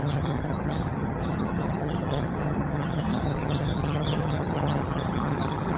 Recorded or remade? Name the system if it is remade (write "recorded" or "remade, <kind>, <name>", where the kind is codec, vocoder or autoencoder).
remade, vocoder, HiFi-GAN